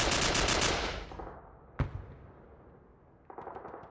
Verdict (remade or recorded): recorded